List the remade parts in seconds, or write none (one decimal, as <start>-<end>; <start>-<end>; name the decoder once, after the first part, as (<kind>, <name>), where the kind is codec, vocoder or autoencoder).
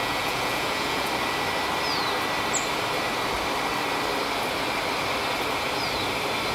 0.0-1.1 (vocoder, Vocos)